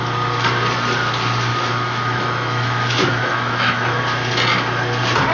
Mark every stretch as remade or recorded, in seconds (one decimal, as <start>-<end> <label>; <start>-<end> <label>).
0.0-1.5 recorded; 1.5-4.0 remade; 4.0-5.3 recorded

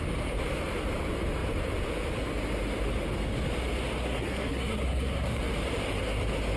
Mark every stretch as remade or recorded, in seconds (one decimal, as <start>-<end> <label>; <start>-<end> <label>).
0.0-4.0 recorded; 4.0-5.4 remade; 5.4-6.6 recorded